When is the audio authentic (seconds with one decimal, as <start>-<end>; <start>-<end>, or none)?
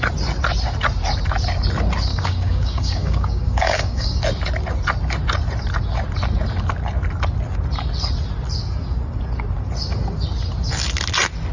0.0-2.1; 4.2-11.5